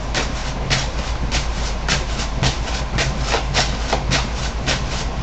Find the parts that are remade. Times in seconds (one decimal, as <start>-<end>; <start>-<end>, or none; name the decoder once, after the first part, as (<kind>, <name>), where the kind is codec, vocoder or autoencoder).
none